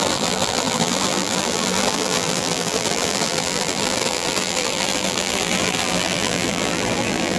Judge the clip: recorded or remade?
remade